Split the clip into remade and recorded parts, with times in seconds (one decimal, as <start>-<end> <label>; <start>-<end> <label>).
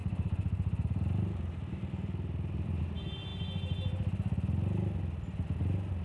0.0-2.8 remade; 2.8-6.0 recorded